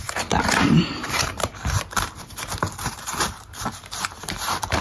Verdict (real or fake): fake